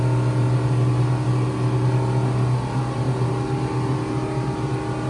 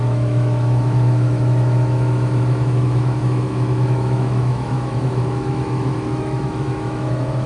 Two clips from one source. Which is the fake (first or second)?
second